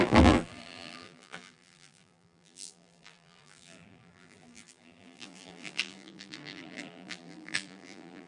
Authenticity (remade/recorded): remade